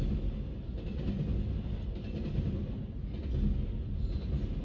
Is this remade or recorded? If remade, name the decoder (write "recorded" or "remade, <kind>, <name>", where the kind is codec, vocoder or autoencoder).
recorded